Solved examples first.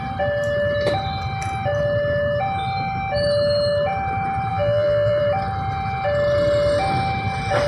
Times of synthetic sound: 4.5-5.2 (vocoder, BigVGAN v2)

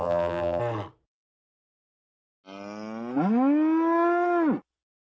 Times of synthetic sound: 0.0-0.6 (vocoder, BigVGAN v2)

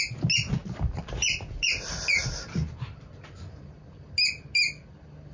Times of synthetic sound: none

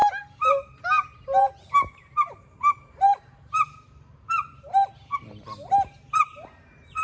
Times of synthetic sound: 0.0-7.0 (vocoder, BigVGAN v2)

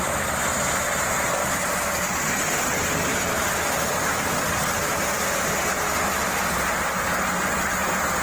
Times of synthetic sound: 1.4-2.3 (vocoder, BigVGAN v2)

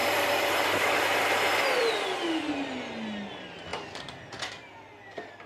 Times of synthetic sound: 0.0-1.9 (vocoder, BigVGAN v2)